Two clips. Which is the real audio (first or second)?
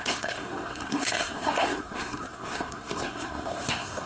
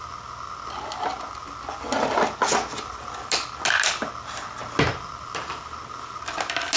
second